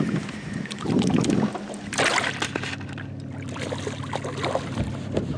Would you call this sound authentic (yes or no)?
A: yes